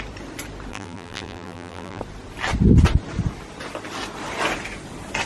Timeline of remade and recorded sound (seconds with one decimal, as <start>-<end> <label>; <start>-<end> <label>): 0.0-0.7 recorded; 0.7-2.0 remade; 2.0-5.3 recorded